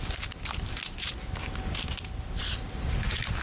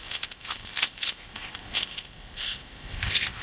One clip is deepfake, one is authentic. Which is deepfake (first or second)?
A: second